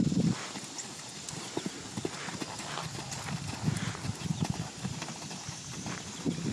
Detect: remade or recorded recorded